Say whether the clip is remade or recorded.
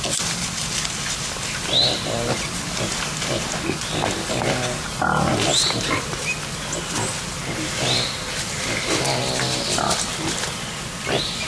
recorded